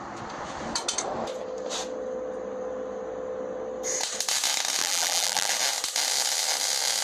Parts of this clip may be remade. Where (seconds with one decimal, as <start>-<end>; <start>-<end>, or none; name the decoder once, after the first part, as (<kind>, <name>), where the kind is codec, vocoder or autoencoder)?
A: 4.8-5.5 (vocoder, BigVGAN v2)